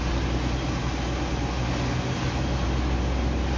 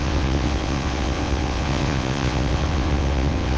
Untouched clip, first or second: first